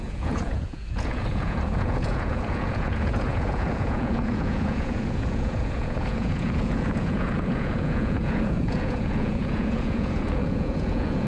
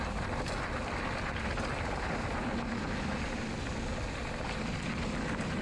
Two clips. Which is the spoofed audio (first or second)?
first